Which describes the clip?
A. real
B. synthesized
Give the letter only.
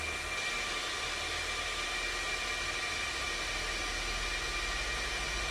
A